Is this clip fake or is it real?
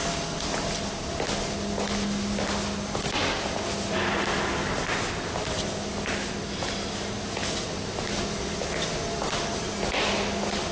real